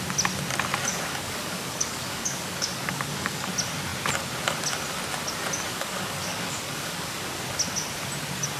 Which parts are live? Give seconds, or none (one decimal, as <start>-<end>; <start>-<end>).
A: 0.0-0.9; 3.5-5.7; 7.4-8.6